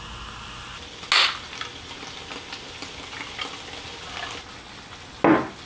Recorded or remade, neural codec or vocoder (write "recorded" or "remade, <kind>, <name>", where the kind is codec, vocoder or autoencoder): recorded